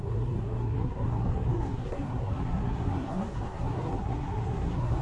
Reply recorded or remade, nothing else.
remade